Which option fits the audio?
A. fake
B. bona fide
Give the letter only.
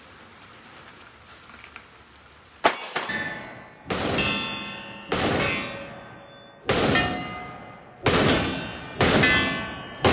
B